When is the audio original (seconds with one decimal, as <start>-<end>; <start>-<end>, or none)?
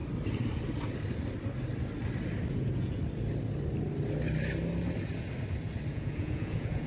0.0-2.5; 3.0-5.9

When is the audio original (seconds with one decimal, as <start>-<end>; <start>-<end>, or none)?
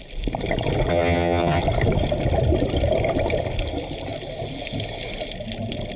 0.0-0.9; 1.6-6.0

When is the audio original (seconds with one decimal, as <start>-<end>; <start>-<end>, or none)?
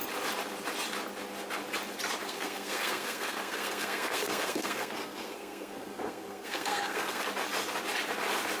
0.0-2.2; 7.2-8.6